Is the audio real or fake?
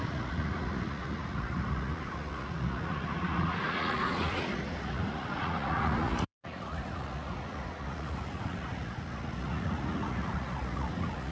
fake